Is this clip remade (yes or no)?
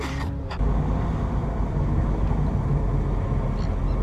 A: no